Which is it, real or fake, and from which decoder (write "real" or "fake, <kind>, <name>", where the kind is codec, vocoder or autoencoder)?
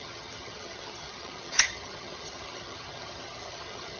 fake, vocoder, HiFi-GAN